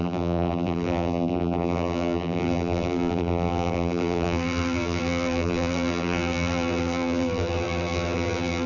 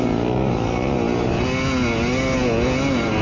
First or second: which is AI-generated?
first